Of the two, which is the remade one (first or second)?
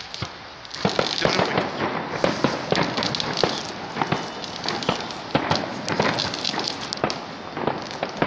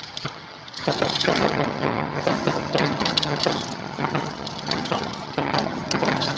second